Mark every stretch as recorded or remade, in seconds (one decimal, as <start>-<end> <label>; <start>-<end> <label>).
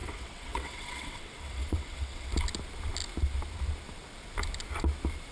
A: 0.0-2.3 remade; 2.3-5.3 recorded